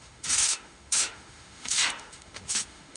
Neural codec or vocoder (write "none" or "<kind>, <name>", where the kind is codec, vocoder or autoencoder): autoencoder, DAC-VAE